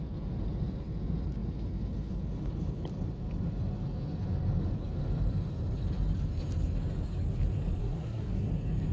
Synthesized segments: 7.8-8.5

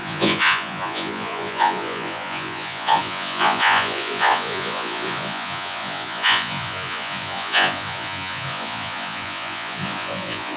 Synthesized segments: 0.0-10.6

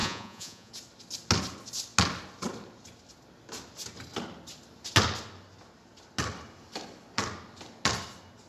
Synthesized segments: 0.0-0.7

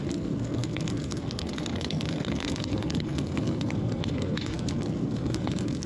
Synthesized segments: 0.0-5.9

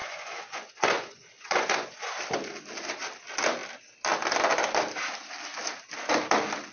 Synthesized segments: 0.0-2.1

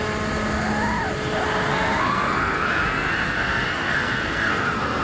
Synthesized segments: 1.7-5.0